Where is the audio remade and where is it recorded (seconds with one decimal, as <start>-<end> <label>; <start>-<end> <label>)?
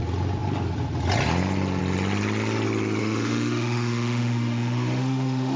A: 0.0-3.0 recorded; 3.0-5.6 remade